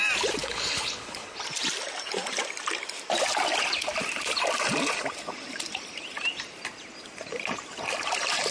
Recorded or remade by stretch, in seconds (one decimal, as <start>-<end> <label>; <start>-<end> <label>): 0.0-0.4 recorded; 0.4-1.4 remade; 1.4-8.5 recorded